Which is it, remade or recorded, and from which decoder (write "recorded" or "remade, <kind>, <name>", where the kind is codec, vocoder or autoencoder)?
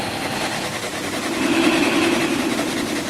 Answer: recorded